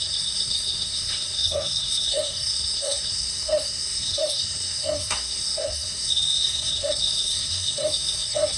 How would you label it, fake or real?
fake